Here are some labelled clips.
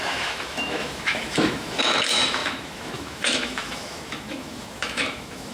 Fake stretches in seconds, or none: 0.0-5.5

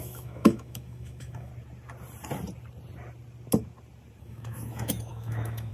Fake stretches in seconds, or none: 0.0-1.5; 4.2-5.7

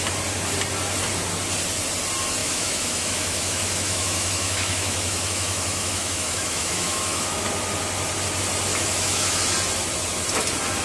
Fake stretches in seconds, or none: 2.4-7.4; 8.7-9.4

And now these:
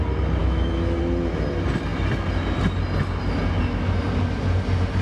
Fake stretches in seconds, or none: 0.4-1.0

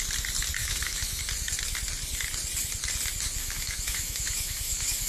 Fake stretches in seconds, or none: 0.6-1.2; 3.4-5.1